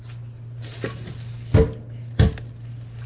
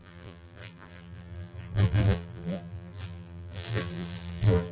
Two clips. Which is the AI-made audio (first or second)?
second